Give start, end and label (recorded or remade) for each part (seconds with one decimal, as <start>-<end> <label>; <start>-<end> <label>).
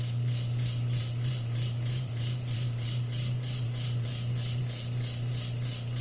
0.0-1.0 recorded; 1.0-4.6 remade; 4.6-6.0 recorded